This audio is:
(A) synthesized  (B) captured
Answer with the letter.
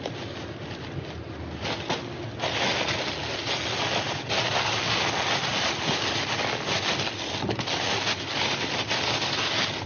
B